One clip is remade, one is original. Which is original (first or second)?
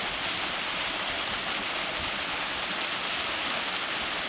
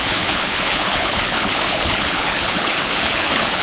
first